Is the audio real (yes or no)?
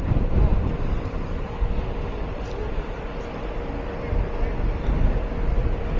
yes